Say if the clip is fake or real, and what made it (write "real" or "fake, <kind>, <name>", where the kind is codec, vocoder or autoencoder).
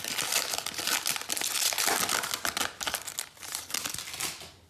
real